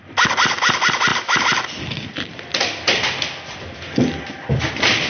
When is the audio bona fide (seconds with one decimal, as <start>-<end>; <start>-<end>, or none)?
0.0-5.1